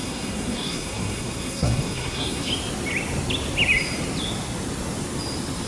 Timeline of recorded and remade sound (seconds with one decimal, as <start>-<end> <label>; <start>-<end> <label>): 0.0-2.5 remade; 2.5-5.7 recorded